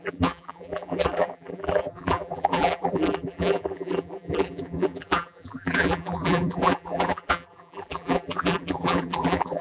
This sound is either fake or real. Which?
fake